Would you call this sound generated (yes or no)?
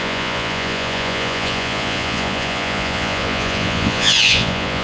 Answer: yes